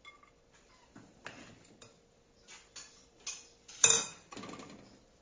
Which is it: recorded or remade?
recorded